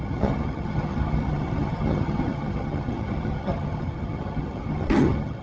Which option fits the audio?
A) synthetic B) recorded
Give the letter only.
A